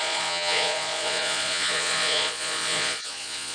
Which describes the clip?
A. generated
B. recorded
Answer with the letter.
A